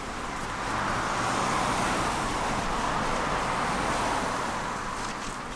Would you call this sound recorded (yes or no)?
yes